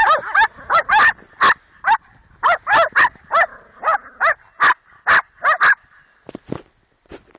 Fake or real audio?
real